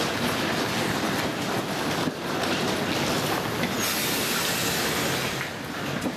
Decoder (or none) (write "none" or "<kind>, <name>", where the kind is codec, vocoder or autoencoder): none